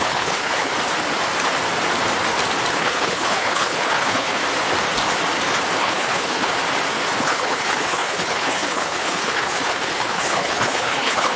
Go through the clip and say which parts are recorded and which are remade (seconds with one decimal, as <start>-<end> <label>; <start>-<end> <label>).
0.0-0.7 remade; 0.7-2.7 recorded; 2.7-4.4 remade; 4.4-5.8 recorded; 5.8-6.5 remade; 6.5-7.2 recorded; 7.2-11.4 remade